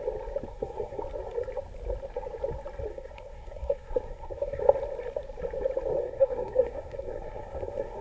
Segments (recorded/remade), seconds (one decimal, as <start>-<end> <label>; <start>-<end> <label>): 0.0-0.5 recorded; 0.5-1.0 remade; 1.0-2.9 recorded; 2.9-4.6 remade; 4.6-6.0 recorded; 6.0-8.0 remade